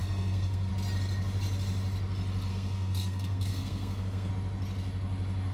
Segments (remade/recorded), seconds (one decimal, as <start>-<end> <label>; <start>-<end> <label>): 0.0-0.7 remade; 0.7-2.5 recorded; 2.5-4.3 remade; 4.3-5.5 recorded